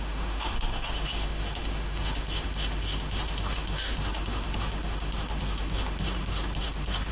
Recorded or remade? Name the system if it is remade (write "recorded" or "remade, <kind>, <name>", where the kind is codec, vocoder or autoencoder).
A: remade, autoencoder, DAC-VAE